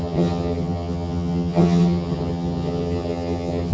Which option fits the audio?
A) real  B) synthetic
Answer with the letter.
B